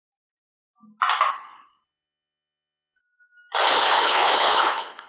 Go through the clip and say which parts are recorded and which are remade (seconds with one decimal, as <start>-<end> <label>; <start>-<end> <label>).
0.0-1.3 recorded; 1.3-3.0 remade; 3.0-3.7 recorded; 3.7-5.1 remade